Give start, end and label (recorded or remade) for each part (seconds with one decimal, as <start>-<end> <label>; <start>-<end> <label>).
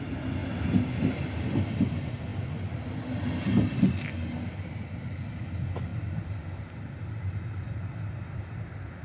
0.0-9.0 recorded